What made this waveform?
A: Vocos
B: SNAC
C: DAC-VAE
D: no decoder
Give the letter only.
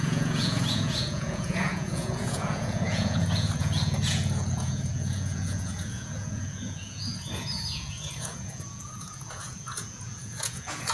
A